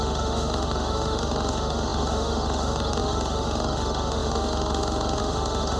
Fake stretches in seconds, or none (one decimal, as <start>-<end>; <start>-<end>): 0.0-5.8